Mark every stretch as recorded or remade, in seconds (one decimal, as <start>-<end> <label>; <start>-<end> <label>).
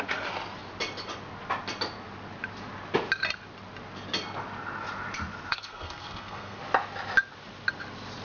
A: 0.0-5.5 recorded; 5.5-6.6 remade; 6.6-8.2 recorded